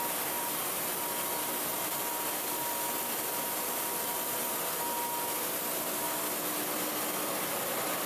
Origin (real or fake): real